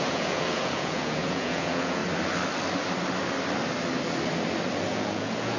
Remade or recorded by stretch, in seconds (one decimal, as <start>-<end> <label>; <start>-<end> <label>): 0.0-2.0 remade; 2.0-4.9 recorded; 4.9-5.6 remade